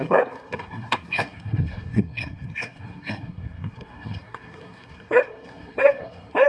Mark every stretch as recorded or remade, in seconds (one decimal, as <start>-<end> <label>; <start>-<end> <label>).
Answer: 0.0-6.5 remade